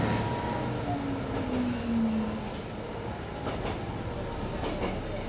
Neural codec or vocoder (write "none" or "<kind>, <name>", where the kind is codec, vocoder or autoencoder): none